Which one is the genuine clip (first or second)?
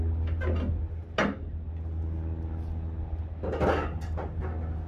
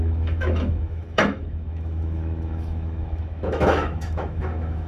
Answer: first